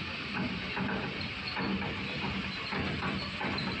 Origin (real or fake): real